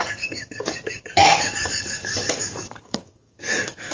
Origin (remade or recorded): remade